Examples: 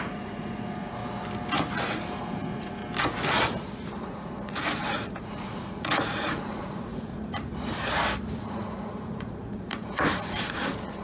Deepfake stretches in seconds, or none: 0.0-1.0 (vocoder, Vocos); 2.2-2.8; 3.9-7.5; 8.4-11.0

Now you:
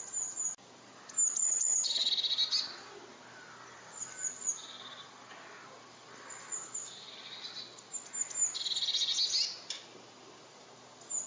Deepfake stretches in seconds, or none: 1.4-2.1 (vocoder, HiFi-GAN)

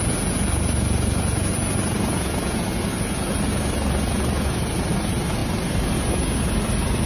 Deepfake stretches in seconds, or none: none

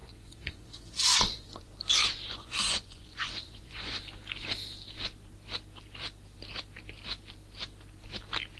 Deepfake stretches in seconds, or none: 0.0-1.7 (vocoder, Vocos); 2.3-4.0

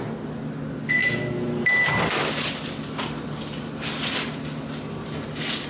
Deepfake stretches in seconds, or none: none